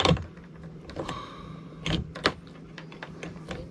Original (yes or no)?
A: no